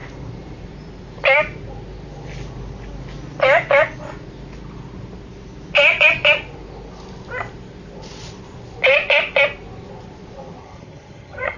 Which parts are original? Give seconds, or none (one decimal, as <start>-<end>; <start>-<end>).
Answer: 0.0-10.6